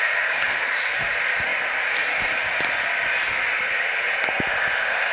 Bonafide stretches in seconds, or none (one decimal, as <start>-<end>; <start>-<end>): 1.5-3.8